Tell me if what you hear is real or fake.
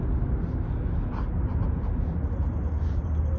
real